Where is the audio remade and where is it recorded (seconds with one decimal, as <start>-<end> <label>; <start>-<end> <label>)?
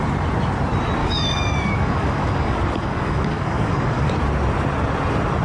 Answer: 0.0-1.0 recorded; 1.0-4.1 remade; 4.1-5.4 recorded